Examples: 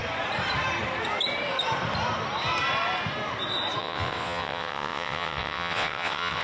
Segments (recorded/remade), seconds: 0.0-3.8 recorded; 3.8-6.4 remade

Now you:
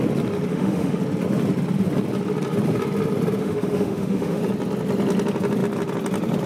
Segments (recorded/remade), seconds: 0.0-0.5 recorded; 0.5-1.0 remade; 1.0-3.4 recorded; 3.4-4.4 remade; 4.4-6.5 recorded

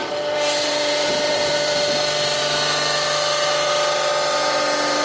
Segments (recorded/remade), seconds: 0.0-1.9 remade; 1.9-5.0 recorded

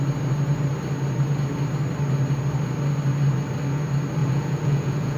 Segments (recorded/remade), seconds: 0.0-4.2 recorded; 4.2-5.2 remade

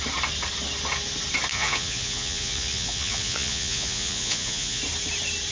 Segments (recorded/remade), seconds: 0.0-1.5 recorded; 1.5-4.8 remade; 4.8-5.5 recorded